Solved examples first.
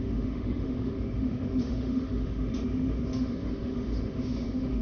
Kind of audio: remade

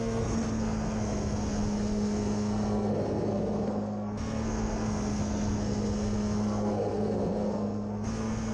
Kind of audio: remade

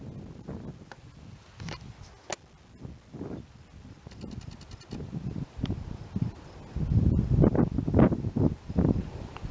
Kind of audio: recorded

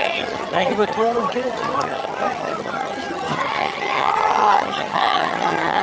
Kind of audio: remade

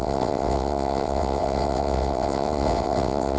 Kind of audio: remade